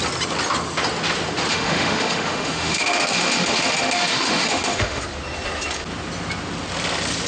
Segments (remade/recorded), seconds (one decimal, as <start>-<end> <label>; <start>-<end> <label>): 0.0-1.5 recorded; 1.5-5.0 remade; 5.0-7.3 recorded